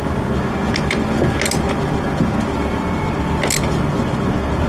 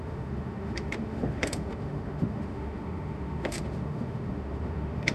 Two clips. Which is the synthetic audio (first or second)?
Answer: second